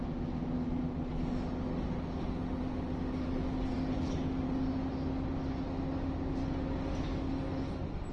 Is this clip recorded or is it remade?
recorded